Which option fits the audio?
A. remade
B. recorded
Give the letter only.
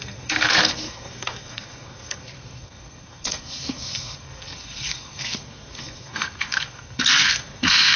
A